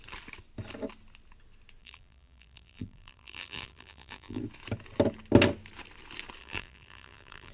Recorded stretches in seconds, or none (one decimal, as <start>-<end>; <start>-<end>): 0.0-1.8; 4.4-6.4

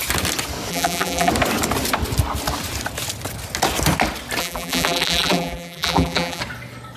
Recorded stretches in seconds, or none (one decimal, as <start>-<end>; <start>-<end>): 0.0-0.7; 1.3-4.4; 6.4-7.0